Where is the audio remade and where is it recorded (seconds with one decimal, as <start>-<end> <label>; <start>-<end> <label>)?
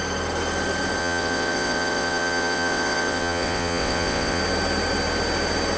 0.0-1.0 recorded; 1.0-4.4 remade; 4.4-5.8 recorded